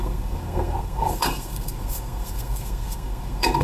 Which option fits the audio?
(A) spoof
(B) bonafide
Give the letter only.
A